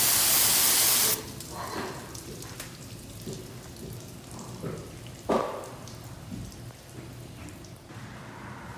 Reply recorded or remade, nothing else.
recorded